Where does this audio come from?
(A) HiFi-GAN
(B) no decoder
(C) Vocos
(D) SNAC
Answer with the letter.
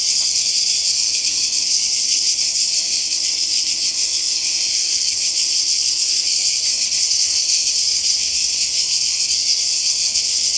D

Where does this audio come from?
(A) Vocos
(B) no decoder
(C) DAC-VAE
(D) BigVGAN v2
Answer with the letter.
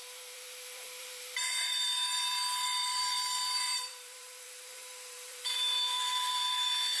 D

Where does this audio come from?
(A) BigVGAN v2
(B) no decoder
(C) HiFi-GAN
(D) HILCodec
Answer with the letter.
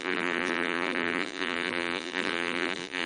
A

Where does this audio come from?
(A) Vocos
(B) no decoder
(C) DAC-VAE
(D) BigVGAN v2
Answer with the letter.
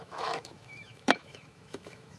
C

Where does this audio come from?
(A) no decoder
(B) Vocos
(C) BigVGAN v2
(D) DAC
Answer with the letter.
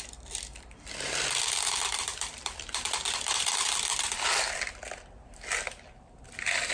C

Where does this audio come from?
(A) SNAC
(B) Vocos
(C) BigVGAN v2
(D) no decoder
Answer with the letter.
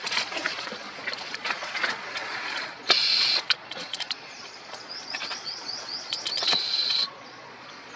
B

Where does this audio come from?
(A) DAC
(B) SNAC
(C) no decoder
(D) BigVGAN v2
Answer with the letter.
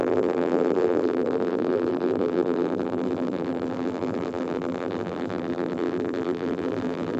D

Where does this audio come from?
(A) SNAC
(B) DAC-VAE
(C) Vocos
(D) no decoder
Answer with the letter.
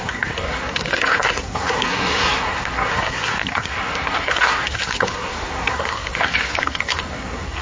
A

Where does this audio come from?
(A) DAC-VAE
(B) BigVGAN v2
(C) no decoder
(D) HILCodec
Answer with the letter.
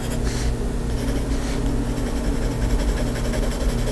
C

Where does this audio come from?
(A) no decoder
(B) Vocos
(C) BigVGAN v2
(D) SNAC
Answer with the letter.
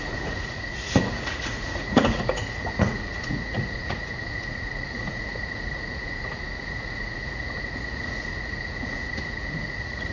B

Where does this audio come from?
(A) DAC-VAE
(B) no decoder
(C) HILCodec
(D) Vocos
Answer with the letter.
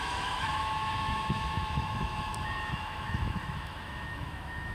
A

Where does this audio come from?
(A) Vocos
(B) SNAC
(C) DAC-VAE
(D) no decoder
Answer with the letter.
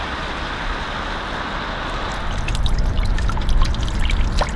D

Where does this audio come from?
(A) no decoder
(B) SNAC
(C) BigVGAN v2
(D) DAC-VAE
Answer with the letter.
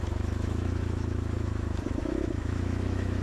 D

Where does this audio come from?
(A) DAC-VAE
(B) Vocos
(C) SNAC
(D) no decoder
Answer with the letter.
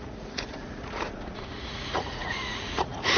B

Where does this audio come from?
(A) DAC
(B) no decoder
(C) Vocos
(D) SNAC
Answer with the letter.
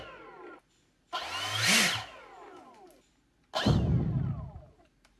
B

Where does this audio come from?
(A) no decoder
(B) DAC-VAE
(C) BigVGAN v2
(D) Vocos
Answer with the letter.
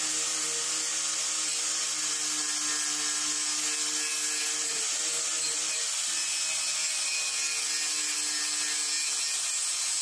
A